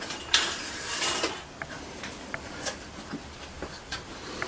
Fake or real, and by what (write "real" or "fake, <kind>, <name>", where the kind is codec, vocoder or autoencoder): fake, vocoder, BigVGAN v2